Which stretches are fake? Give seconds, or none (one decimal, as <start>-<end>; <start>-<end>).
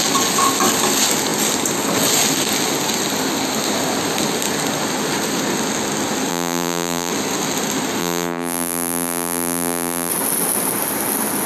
6.3-7.1; 8.0-10.1